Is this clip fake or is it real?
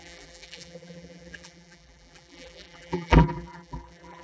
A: fake